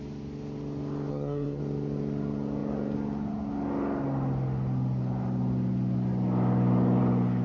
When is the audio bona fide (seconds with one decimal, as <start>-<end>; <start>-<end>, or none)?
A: 0.0-1.1; 1.6-7.4